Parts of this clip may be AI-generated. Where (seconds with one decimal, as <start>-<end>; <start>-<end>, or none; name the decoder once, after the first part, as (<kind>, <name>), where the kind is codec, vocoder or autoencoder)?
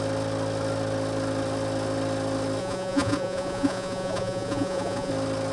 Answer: 2.6-5.1 (vocoder, Vocos)